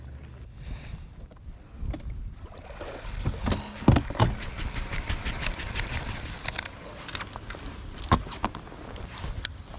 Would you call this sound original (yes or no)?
yes